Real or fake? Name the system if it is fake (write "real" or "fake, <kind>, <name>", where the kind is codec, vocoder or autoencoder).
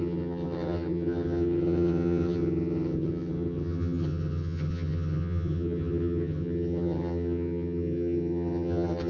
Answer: fake, vocoder, HiFi-GAN